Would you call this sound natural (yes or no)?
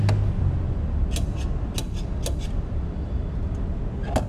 yes